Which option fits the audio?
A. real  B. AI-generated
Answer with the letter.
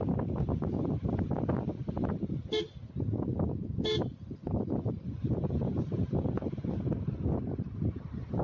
A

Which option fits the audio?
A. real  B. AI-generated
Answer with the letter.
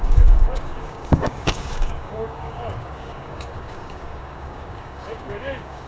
B